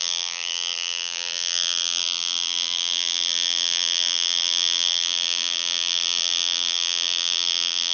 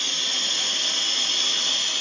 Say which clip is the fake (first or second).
first